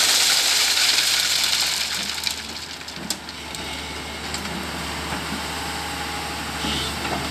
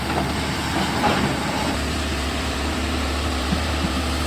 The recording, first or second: first